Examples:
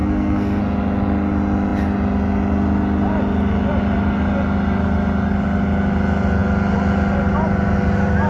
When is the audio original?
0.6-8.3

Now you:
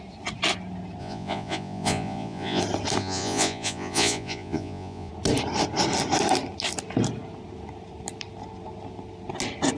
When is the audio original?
0.0-1.0; 2.6-3.0; 5.1-9.8

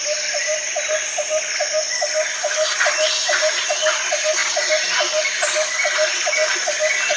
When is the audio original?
0.0-7.2

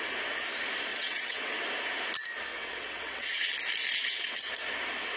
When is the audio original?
0.0-0.9; 1.6-2.5; 3.5-4.0; 4.5-5.2

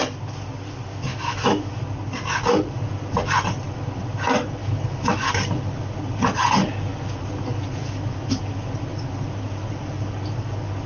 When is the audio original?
0.0-1.1; 1.8-4.6; 5.3-10.9

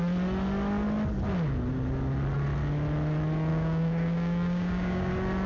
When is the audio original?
0.0-3.5; 5.1-5.5

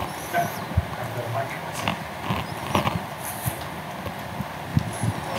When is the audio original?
0.8-5.4